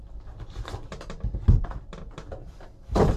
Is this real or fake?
fake